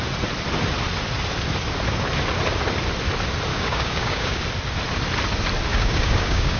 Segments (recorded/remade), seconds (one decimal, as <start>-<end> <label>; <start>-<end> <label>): 0.0-3.5 recorded; 3.5-4.4 remade; 4.4-5.7 recorded; 5.7-6.6 remade